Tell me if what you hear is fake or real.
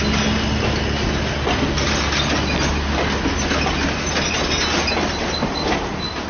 real